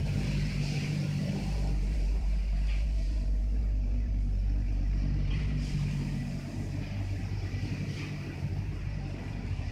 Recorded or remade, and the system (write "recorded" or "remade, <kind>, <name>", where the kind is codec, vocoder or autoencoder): remade, vocoder, BigVGAN v2